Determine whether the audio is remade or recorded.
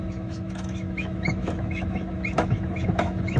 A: remade